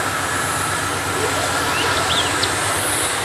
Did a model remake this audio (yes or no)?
no